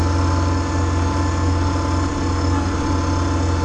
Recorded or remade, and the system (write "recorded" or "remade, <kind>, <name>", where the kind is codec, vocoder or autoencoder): recorded